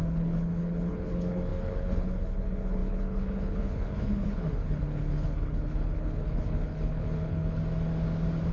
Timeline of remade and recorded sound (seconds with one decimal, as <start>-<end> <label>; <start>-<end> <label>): 0.0-7.6 remade; 7.6-8.5 recorded